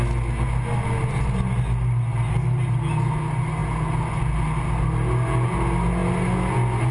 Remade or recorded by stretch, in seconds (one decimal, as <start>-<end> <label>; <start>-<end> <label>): 0.0-6.9 recorded